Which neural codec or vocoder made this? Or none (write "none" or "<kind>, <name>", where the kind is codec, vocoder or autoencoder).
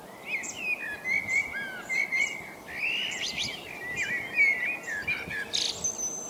none